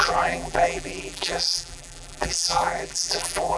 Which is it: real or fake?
fake